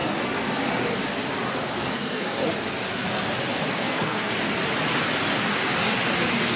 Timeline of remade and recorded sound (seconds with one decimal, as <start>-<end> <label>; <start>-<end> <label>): 0.0-1.5 recorded; 1.5-2.4 remade; 2.4-3.7 recorded; 3.7-4.3 remade; 4.3-6.6 recorded